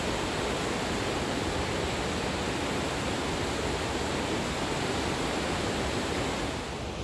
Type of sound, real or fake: real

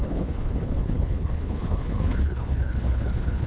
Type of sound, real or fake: fake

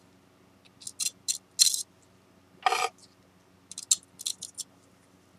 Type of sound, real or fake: real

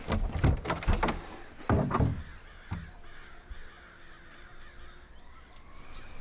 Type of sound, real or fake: real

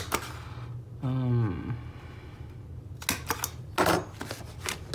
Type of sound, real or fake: real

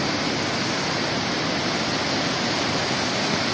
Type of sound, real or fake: real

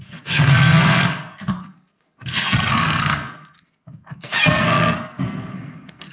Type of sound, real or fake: fake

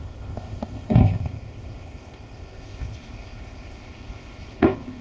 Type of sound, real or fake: fake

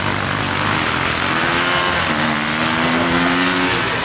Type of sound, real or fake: real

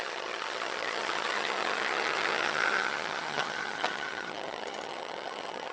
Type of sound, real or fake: fake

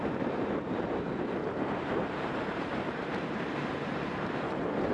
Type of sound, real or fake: fake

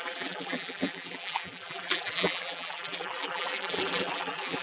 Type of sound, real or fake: fake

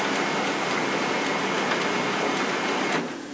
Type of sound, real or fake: real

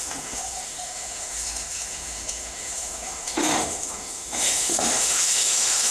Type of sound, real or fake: fake